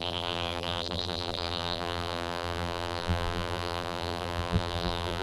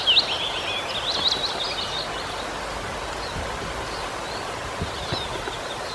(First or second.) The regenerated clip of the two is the first